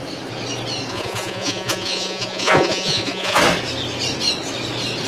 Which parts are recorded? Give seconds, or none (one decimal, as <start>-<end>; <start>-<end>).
0.0-0.9; 3.4-5.1